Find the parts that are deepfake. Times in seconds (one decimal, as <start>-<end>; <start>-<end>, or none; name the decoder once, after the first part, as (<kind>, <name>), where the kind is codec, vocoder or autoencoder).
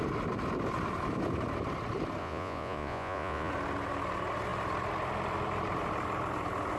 2.2-3.5 (vocoder, Vocos)